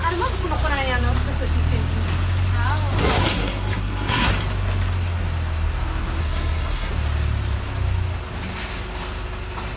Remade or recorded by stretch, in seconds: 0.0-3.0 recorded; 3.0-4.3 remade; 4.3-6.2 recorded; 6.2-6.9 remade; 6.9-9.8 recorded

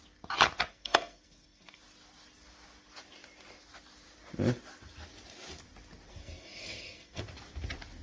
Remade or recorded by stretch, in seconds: 0.0-0.7 recorded; 0.7-1.8 remade; 1.8-6.1 recorded; 6.1-7.2 remade; 7.2-8.0 recorded

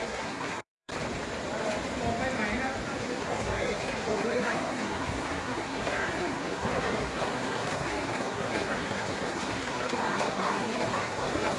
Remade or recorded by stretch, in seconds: 0.0-0.9 remade; 0.9-3.0 recorded; 3.0-11.6 remade

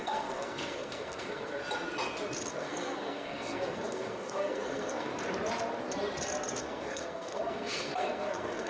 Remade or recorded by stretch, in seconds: 0.0-1.6 remade; 1.6-2.5 recorded; 2.5-5.1 remade; 5.1-6.6 recorded; 6.6-8.7 remade

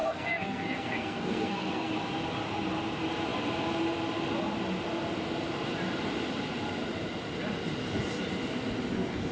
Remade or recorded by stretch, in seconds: 0.0-1.9 remade; 1.9-9.3 recorded

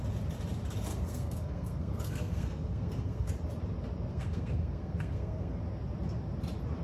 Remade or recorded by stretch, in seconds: 0.0-0.9 recorded; 0.9-3.3 remade; 3.3-4.1 recorded; 4.1-5.6 remade; 5.6-6.8 recorded

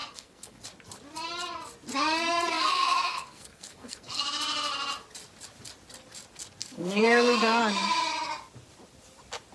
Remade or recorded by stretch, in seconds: 0.0-0.6 remade; 0.6-2.5 recorded; 2.5-4.2 remade; 4.2-6.6 recorded; 6.6-7.6 remade; 7.6-9.5 recorded

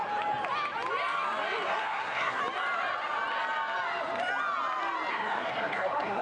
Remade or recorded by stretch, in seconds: 0.0-1.8 recorded; 1.8-2.4 remade; 2.4-5.1 recorded; 5.1-6.2 remade